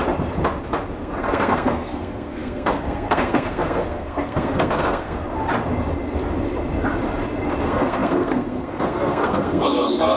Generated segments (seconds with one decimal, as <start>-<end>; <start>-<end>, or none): 1.0-5.2; 7.6-10.2